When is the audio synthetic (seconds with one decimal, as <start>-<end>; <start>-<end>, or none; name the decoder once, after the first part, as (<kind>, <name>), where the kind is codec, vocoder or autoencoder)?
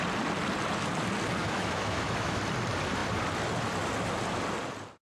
1.4-2.4 (autoencoder, DAC-VAE)